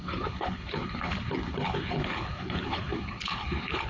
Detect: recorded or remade remade